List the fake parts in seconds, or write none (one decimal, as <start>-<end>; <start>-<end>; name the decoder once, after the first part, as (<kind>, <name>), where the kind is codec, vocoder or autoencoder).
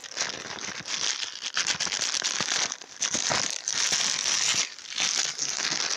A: none